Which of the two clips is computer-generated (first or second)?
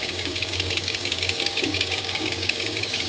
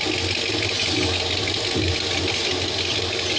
first